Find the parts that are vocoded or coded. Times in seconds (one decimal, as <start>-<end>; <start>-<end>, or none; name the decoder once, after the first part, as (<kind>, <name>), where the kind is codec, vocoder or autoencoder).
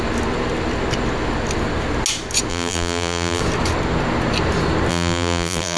2.5-3.4 (vocoder, BigVGAN v2); 4.9-5.8